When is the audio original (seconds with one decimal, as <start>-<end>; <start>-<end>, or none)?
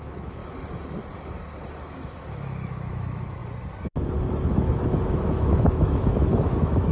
0.4-1.8; 3.4-4.5